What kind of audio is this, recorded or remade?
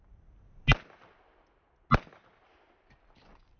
recorded